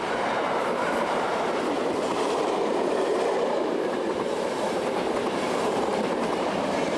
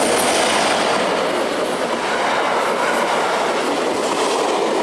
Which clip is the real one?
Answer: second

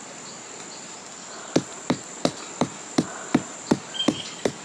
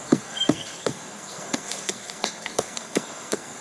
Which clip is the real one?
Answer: first